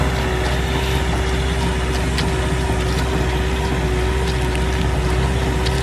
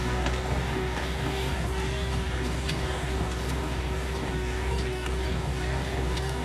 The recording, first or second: first